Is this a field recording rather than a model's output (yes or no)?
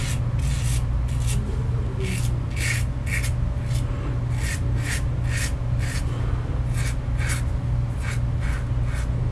yes